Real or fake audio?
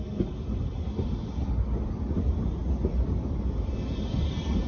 real